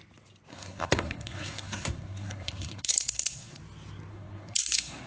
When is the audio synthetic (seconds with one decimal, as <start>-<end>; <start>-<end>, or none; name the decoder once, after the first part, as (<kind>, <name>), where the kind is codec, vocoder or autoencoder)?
0.5-3.6 (codec, SNAC); 4.1-5.1